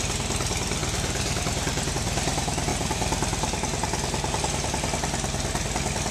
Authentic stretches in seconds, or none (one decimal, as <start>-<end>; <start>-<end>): 0.0-0.8; 1.9-6.1